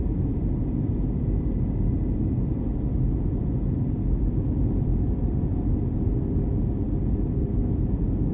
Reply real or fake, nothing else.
real